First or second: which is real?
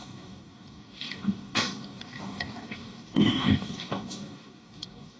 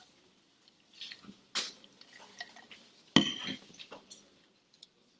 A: second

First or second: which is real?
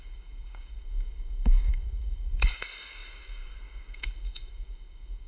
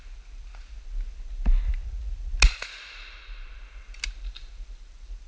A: second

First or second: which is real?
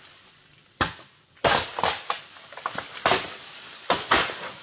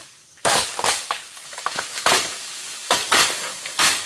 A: first